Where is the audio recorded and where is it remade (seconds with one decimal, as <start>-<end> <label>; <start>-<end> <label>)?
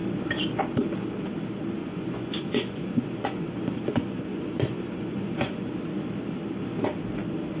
0.0-1.8 recorded; 1.8-5.7 remade; 5.7-7.6 recorded